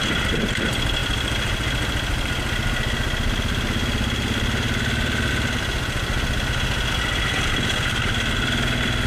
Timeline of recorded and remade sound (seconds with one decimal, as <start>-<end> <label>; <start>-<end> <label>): 0.0-9.1 recorded